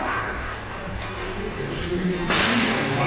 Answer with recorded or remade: remade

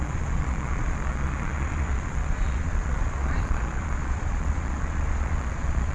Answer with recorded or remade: remade